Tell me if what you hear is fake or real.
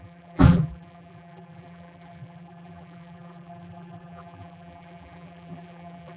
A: fake